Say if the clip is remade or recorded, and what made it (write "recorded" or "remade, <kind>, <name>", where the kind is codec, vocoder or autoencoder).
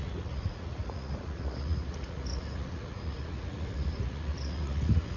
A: remade, vocoder, Vocos